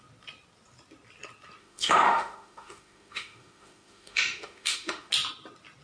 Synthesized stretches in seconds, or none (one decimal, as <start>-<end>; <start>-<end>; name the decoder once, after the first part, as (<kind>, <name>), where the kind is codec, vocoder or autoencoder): 1.6-5.1 (autoencoder, DAC-VAE)